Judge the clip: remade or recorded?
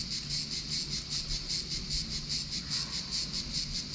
recorded